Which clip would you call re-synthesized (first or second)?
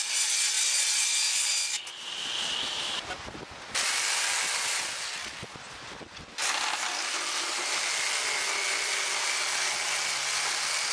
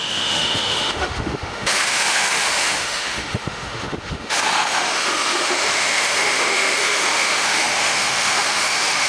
second